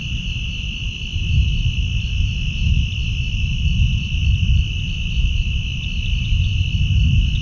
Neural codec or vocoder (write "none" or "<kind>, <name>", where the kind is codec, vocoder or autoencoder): none